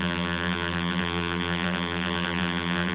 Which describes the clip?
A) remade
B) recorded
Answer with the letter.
A